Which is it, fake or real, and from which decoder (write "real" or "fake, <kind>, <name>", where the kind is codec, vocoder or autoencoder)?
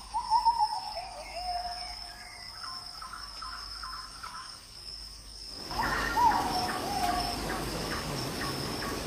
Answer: fake, codec, DAC